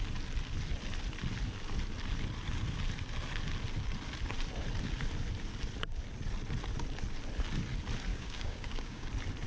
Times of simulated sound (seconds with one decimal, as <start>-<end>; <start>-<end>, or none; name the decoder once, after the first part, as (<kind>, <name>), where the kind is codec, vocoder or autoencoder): 8.1-9.1 (codec, DAC)